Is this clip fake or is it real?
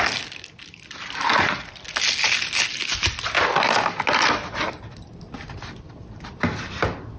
real